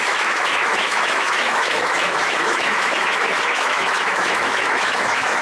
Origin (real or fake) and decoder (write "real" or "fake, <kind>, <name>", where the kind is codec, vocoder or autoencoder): fake, autoencoder, DAC-VAE